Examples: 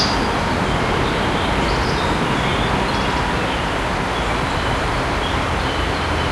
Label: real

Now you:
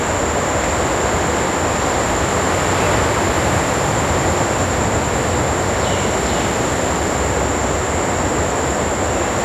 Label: real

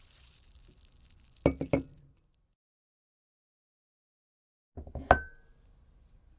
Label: real